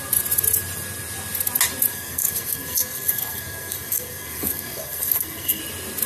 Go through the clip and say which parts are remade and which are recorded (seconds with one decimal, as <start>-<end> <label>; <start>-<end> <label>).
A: 0.0-1.9 recorded; 1.9-5.6 remade; 5.6-6.1 recorded